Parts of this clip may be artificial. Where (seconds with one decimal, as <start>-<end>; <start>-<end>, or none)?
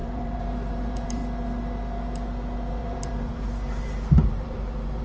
0.0-1.2; 2.7-5.0